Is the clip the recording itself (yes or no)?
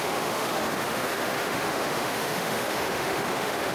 no